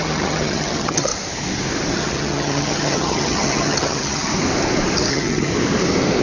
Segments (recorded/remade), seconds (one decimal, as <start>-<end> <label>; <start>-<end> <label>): 0.0-1.1 remade; 1.1-1.9 recorded; 1.9-4.3 remade; 4.3-5.1 recorded; 5.1-5.5 remade; 5.5-6.2 recorded